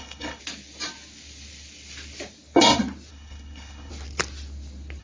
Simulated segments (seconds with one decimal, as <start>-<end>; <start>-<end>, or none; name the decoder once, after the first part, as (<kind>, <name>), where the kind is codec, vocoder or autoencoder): 0.0-0.4 (codec, HILCodec); 3.1-3.9